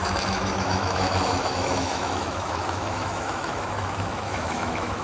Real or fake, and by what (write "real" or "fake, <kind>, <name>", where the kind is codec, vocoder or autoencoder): fake, autoencoder, DAC-VAE